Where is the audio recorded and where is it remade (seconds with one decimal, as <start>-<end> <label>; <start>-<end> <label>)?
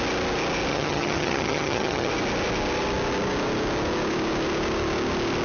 0.0-0.7 recorded; 0.7-2.1 remade; 2.1-5.4 recorded